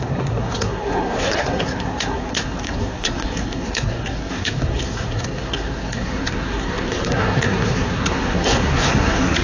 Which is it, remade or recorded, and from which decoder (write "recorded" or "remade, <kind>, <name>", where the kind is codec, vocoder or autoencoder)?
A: remade, codec, SNAC